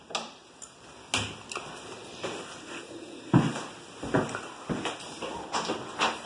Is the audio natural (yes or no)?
yes